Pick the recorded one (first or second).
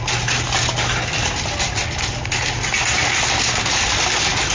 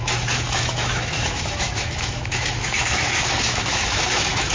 first